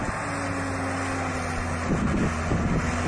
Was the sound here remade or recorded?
recorded